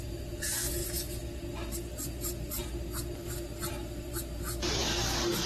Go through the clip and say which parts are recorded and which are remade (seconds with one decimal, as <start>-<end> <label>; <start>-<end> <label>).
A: 0.0-4.8 recorded; 4.8-5.5 remade